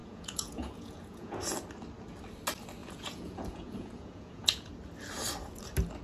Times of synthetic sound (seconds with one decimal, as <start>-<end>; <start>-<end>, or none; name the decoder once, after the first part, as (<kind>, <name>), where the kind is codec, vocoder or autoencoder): 0.0-1.4 (vocoder, Vocos); 2.8-4.7

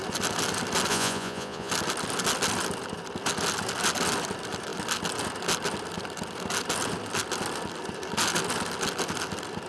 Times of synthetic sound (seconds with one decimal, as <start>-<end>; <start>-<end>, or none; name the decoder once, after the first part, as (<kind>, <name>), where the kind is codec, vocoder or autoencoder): 0.9-1.7 (vocoder, Vocos)

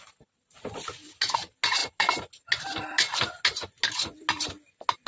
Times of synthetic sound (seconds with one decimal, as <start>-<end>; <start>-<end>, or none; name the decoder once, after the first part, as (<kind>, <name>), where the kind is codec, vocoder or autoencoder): none

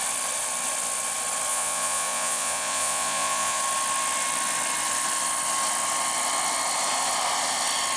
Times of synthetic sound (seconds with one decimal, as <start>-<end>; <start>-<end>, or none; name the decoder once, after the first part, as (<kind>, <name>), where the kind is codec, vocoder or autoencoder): 1.5-3.6 (vocoder, Vocos)

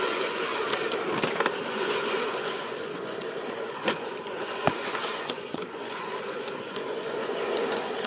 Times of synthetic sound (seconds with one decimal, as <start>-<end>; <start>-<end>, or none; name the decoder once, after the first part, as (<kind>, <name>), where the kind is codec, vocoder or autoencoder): 0.0-0.5 (vocoder, Vocos); 1.7-8.1

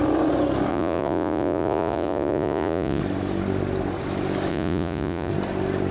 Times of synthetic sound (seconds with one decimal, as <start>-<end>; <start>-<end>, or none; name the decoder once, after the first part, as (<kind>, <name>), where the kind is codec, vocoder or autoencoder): 0.7-3.0 (vocoder, Vocos); 4.5-5.3

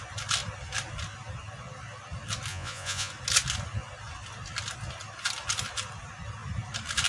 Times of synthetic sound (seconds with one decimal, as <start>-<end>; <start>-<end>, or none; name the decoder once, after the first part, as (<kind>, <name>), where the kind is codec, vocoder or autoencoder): 2.5-3.1 (vocoder, Vocos)

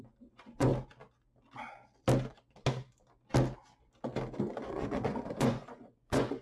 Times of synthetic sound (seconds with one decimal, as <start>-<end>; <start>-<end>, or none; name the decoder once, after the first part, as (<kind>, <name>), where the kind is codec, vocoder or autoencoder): 0.0-0.7 (vocoder, Vocos); 4.4-6.4